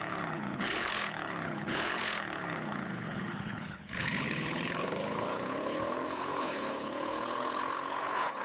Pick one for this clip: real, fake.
fake